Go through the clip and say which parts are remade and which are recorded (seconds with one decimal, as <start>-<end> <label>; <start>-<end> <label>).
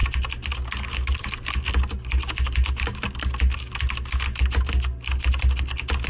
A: 0.0-6.1 recorded